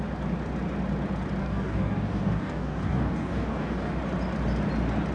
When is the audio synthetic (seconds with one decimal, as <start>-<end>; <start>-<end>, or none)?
1.4-4.0